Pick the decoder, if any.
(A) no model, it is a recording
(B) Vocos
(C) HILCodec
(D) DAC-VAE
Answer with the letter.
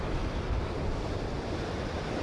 A